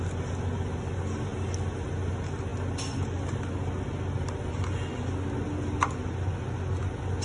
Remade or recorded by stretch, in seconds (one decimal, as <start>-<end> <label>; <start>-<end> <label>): 0.0-7.2 recorded